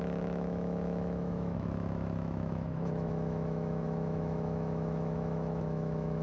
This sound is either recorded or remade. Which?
remade